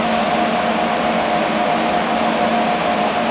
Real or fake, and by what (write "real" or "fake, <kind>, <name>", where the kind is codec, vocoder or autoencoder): real